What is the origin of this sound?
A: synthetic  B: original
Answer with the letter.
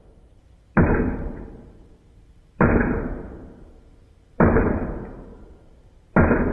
A